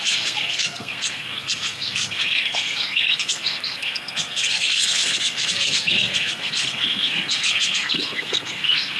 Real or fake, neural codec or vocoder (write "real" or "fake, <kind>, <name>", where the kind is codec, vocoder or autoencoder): fake, codec, SNAC